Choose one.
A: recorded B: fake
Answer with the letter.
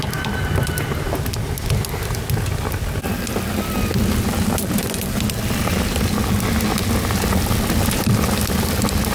A